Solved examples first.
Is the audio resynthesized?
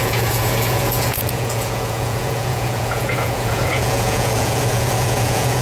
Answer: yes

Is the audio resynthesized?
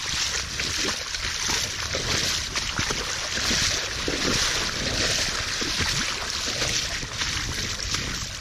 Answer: no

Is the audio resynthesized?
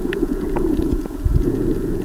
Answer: yes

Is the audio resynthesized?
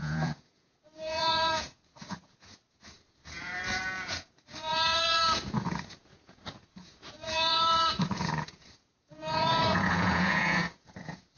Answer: yes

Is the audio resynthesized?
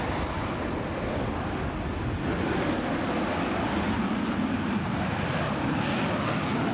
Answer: no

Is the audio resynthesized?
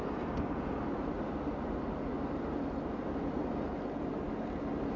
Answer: no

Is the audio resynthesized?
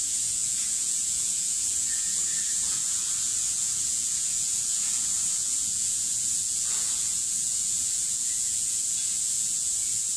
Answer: yes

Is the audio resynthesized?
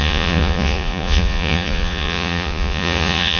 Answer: yes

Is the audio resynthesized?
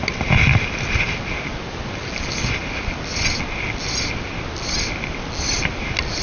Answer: no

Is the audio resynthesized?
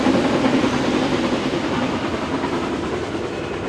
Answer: no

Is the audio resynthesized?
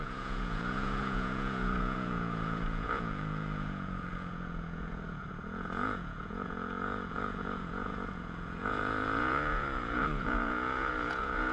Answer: yes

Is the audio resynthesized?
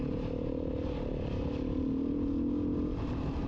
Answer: no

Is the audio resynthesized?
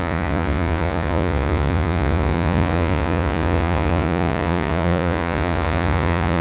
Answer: yes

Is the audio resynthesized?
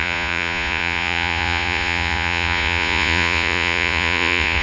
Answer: yes